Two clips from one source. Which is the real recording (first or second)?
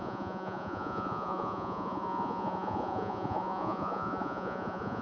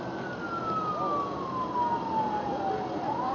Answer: second